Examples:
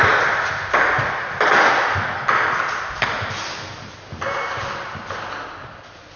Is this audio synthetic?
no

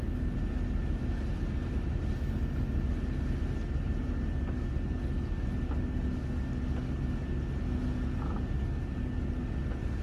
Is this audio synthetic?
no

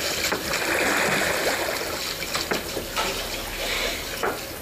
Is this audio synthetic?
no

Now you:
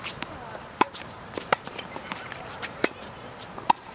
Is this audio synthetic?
yes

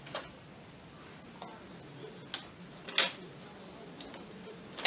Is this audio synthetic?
no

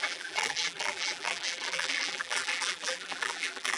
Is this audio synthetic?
yes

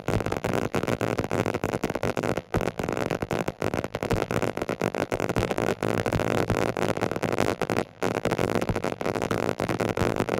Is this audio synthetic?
yes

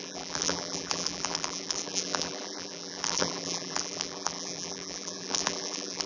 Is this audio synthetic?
yes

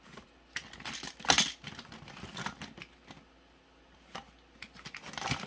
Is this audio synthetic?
no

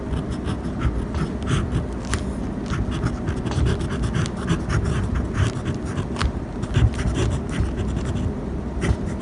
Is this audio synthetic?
no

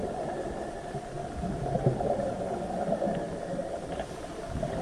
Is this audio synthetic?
no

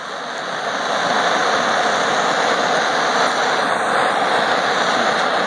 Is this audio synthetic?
no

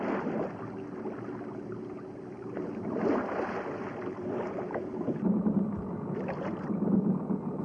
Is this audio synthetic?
no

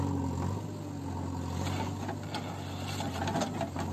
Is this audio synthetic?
no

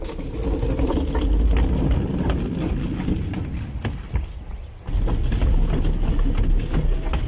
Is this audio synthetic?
no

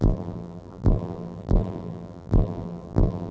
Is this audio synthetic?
yes